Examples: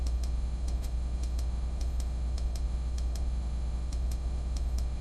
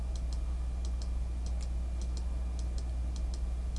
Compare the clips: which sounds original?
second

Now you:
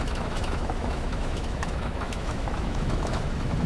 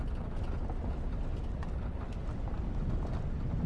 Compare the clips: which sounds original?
second